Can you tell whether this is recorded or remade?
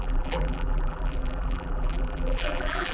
remade